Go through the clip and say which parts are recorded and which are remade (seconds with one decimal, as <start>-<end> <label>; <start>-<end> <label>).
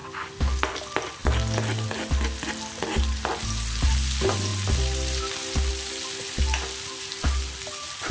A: 0.0-8.1 recorded